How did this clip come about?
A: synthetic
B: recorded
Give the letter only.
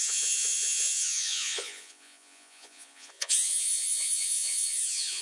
A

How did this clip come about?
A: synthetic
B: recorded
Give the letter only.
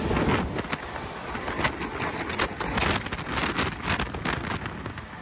B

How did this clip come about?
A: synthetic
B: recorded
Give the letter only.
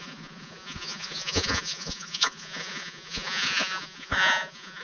A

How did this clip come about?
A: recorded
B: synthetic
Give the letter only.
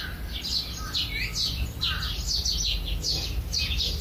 A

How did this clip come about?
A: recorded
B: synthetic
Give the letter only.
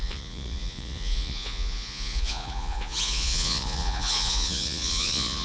B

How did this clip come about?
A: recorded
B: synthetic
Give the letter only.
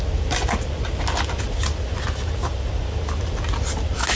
A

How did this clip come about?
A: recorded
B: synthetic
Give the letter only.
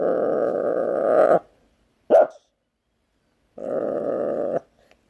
A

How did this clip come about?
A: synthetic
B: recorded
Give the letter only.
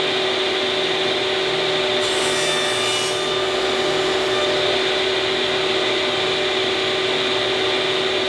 B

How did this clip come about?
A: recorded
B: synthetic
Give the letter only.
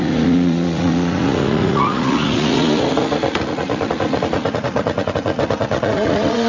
B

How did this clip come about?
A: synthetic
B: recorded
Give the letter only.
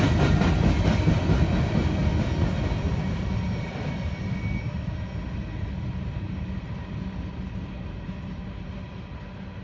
B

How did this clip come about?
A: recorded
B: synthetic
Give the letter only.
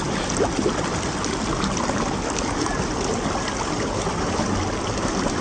A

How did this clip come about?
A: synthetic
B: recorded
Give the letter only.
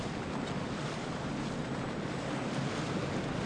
B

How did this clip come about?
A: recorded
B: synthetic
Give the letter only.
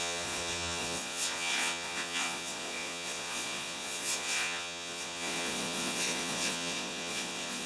B